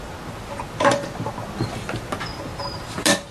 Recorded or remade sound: recorded